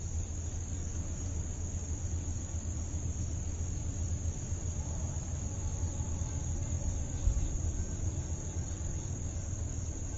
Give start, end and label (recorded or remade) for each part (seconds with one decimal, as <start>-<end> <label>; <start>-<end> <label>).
0.0-10.2 recorded